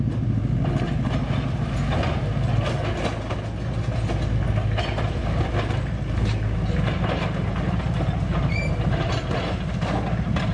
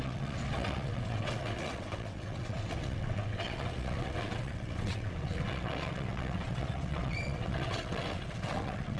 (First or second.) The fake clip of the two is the second